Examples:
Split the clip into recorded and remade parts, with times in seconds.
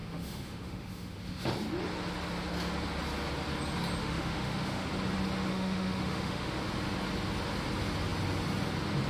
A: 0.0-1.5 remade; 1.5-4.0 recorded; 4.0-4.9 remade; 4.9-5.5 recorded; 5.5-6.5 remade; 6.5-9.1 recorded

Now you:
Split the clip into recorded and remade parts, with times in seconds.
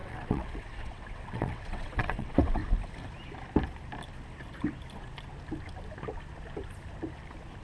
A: 0.0-2.6 remade; 2.6-7.6 recorded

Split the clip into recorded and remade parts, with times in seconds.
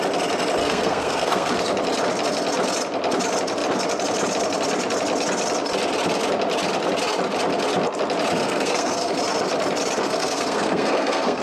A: 0.0-0.6 recorded; 0.6-1.5 remade; 1.5-8.4 recorded; 8.4-9.1 remade; 9.1-10.0 recorded; 10.0-11.4 remade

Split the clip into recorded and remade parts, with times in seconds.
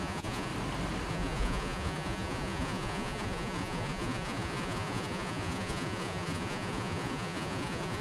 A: 0.0-0.5 remade; 0.5-1.1 recorded; 1.1-8.0 remade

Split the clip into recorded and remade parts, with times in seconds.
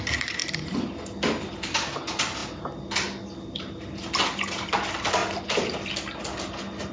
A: 0.0-6.9 recorded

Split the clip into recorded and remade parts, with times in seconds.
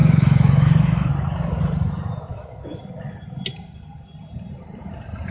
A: 0.0-1.1 remade; 1.1-2.3 recorded; 2.3-2.8 remade; 2.8-5.3 recorded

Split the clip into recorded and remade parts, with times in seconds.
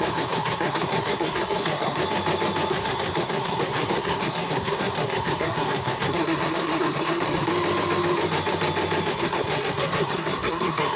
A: 0.0-2.0 remade; 2.0-2.7 recorded; 2.7-7.5 remade; 7.5-9.1 recorded; 9.1-11.0 remade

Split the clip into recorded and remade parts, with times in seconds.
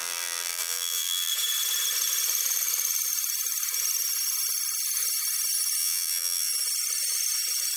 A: 0.0-1.3 remade; 1.3-5.8 recorded; 5.8-6.5 remade; 6.5-7.8 recorded